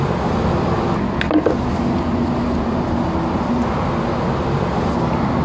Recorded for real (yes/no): yes